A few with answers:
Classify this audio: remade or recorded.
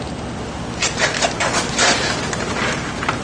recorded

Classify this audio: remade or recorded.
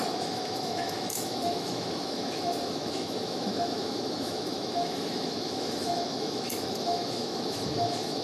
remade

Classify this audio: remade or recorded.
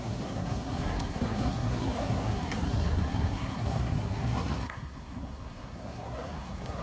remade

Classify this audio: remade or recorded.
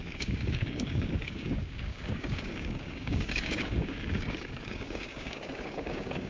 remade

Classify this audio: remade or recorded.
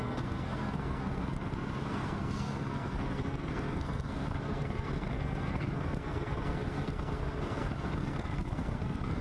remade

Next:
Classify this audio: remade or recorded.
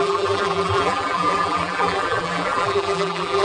remade